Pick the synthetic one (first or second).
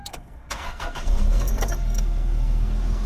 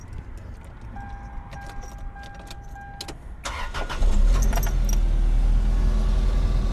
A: first